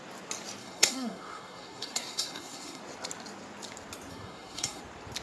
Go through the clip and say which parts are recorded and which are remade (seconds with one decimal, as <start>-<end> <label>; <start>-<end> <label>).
0.0-0.6 recorded; 0.6-2.8 remade; 2.8-4.1 recorded; 4.1-4.8 remade; 4.8-5.2 recorded